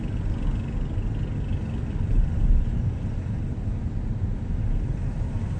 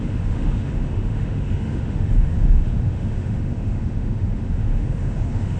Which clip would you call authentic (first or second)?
first